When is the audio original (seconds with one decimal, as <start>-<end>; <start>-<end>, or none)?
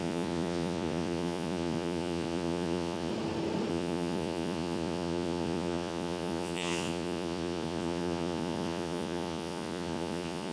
3.1-3.7